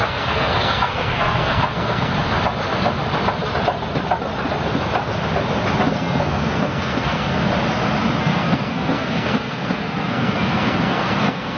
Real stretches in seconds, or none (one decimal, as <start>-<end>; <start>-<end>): 2.1-5.9; 7.5-8.2